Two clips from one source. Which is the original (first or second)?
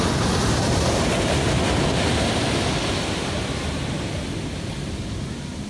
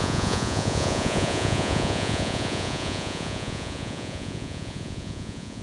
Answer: first